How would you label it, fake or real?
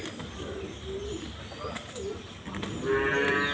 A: real